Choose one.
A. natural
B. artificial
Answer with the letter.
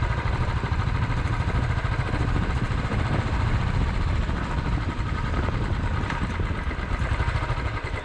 B